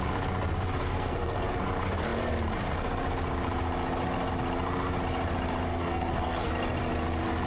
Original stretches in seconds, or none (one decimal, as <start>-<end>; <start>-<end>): 0.0-0.9; 1.5-5.7; 6.5-7.5